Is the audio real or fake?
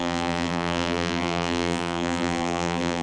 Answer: fake